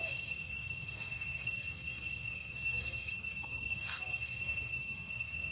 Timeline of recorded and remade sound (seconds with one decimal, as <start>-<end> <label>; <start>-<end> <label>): 0.0-5.5 remade